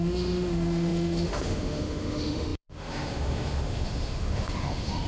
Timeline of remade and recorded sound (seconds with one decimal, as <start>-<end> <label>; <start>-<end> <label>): 0.0-5.1 remade